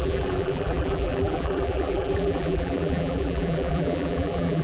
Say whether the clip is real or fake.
fake